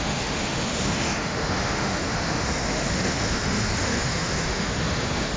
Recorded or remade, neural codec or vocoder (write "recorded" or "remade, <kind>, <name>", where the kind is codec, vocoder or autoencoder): remade, autoencoder, DAC-VAE